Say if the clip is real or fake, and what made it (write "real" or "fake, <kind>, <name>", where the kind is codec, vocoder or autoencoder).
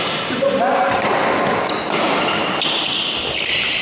real